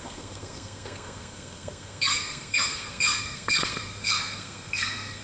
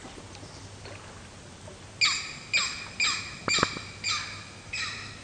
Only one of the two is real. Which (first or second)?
second